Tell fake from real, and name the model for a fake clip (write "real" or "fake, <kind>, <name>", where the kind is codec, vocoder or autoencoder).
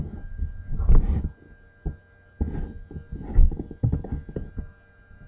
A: real